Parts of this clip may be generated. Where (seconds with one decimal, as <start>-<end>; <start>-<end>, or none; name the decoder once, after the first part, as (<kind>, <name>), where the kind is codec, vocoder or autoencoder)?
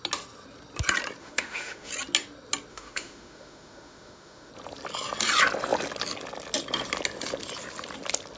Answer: 1.2-1.9 (autoencoder, DAC-VAE); 2.7-4.5